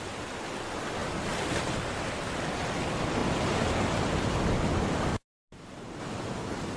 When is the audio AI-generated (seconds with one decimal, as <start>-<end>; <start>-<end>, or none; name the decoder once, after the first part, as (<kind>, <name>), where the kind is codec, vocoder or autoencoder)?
1.0-1.9 (vocoder, BigVGAN v2); 5.1-6.0